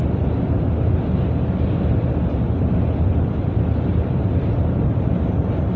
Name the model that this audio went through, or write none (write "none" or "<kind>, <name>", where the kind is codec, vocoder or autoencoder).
none